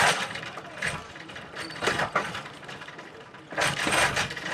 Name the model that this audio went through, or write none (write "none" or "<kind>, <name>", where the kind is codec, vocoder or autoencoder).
vocoder, BigVGAN v2